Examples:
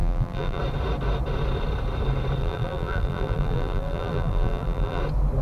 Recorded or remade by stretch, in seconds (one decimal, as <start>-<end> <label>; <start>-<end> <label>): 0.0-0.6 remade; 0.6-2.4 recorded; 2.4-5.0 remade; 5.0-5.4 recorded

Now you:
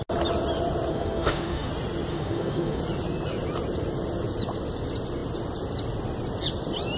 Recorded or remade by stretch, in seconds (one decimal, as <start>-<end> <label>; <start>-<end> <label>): 0.0-0.9 recorded; 0.9-1.7 remade; 1.7-2.1 recorded; 2.1-2.8 remade; 2.8-7.0 recorded

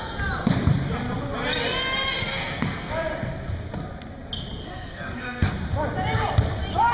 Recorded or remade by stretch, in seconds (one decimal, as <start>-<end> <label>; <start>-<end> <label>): 0.0-2.3 recorded; 2.3-2.9 remade; 2.9-4.6 recorded; 4.6-5.5 remade; 5.5-6.9 recorded